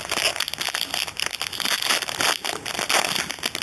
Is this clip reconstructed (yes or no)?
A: no